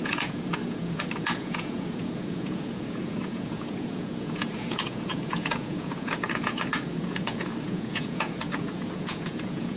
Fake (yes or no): yes